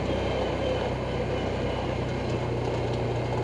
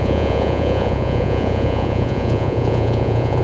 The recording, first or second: first